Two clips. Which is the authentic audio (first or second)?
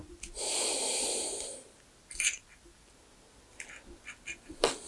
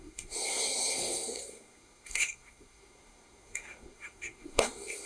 first